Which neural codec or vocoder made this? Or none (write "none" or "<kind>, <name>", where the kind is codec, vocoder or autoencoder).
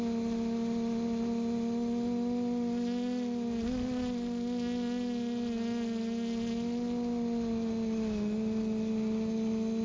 none